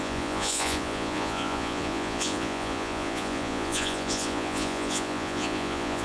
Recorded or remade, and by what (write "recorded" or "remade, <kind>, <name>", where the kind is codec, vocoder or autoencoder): remade, vocoder, Vocos